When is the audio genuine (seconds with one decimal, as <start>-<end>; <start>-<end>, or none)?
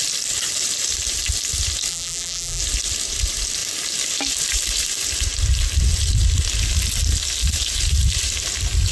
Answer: 0.0-1.9; 2.6-8.9